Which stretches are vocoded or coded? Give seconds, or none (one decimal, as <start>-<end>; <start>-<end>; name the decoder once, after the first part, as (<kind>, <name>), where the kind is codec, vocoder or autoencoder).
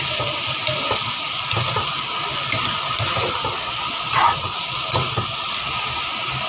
none